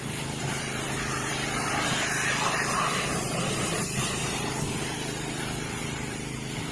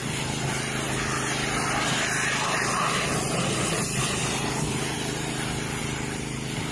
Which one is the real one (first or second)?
second